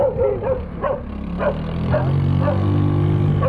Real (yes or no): yes